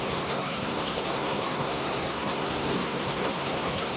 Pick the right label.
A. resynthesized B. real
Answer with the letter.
A